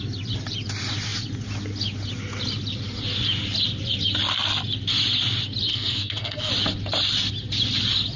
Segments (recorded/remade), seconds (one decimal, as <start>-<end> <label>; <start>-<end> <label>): 0.0-5.7 recorded; 5.7-6.5 remade; 6.5-8.2 recorded